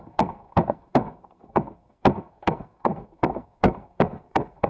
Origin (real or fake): fake